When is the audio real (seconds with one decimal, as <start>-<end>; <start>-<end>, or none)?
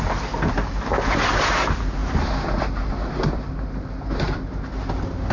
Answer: 0.0-5.3